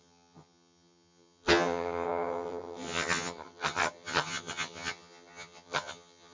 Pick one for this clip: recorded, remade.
remade